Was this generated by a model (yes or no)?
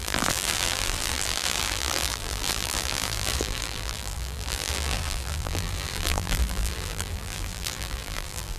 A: yes